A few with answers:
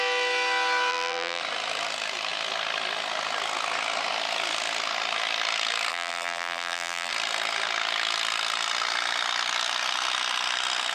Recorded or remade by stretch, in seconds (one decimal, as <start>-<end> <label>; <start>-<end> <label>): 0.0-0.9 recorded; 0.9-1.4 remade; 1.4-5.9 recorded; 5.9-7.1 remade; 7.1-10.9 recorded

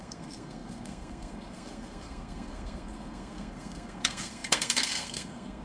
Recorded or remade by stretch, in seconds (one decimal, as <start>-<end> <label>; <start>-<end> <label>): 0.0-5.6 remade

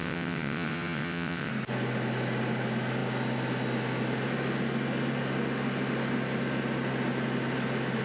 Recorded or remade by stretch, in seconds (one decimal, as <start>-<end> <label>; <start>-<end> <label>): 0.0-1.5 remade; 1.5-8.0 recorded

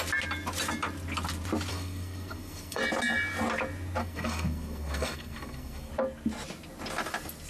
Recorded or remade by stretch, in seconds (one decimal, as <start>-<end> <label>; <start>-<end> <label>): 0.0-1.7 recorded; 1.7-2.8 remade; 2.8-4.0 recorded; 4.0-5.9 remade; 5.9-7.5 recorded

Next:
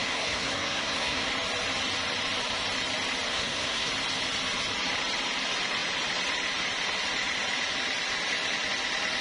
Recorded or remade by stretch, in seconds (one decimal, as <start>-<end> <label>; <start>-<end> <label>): 0.0-1.3 remade; 1.3-3.3 recorded; 3.3-3.9 remade; 3.9-9.2 recorded